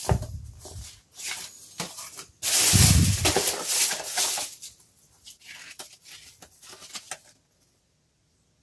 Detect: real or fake real